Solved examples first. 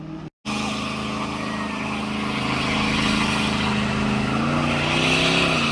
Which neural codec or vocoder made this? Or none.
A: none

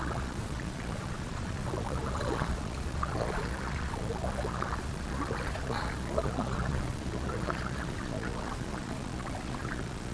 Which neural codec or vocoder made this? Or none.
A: vocoder, Vocos